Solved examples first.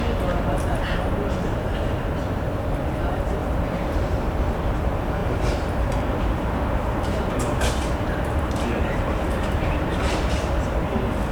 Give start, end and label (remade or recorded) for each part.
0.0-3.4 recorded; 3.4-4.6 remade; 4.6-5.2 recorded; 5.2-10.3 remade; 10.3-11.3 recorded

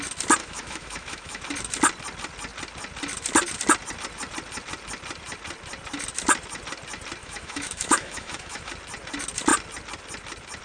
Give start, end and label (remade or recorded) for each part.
0.0-0.4 recorded; 0.4-1.4 remade; 1.4-7.2 recorded; 7.2-8.7 remade; 8.7-10.6 recorded

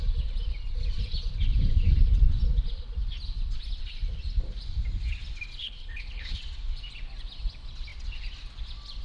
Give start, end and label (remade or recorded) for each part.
0.0-5.6 recorded; 5.6-6.4 remade; 6.4-9.0 recorded

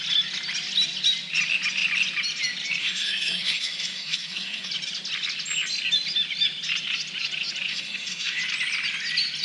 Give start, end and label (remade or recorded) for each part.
0.0-2.8 recorded; 2.8-4.7 remade; 4.7-7.7 recorded; 7.7-8.4 remade; 8.4-9.4 recorded

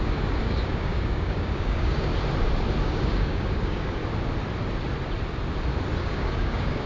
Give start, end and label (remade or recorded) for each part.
0.0-2.1 remade; 2.1-2.8 recorded; 2.8-4.0 remade; 4.0-6.0 recorded; 6.0-6.9 remade

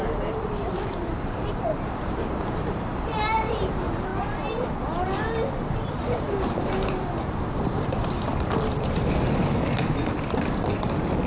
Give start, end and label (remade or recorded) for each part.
0.0-4.1 remade; 4.1-5.9 recorded; 5.9-8.3 remade; 8.3-11.3 recorded